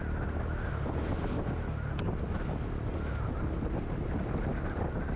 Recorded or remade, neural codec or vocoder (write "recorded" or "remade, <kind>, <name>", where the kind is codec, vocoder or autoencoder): recorded